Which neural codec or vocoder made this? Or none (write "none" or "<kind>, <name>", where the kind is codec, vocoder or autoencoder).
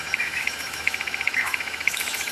autoencoder, DAC-VAE